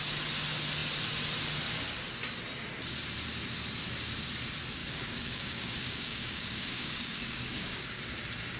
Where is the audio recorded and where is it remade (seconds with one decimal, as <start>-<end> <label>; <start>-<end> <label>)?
0.0-4.8 recorded; 4.8-8.0 remade; 8.0-8.6 recorded